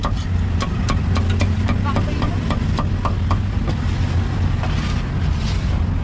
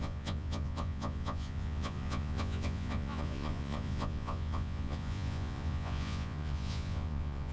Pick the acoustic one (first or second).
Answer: first